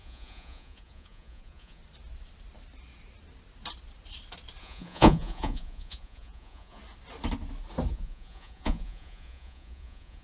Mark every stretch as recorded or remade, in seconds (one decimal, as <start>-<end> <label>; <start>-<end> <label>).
0.0-1.8 remade; 1.8-4.6 recorded; 4.6-6.8 remade; 6.8-7.9 recorded; 7.9-10.2 remade